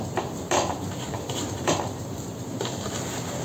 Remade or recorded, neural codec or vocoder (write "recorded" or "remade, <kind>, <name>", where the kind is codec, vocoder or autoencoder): remade, vocoder, BigVGAN v2